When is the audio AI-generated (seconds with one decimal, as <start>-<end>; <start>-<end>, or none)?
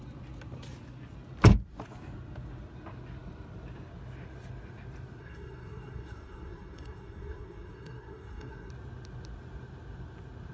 5.2-8.7